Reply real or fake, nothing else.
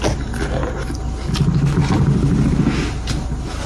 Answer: real